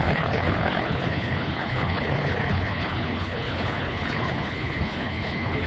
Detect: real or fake fake